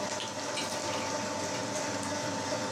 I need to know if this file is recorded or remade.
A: recorded